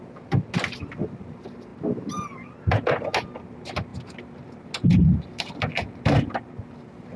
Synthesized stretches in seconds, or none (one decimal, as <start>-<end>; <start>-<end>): none